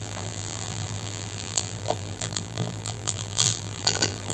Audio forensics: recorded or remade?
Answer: remade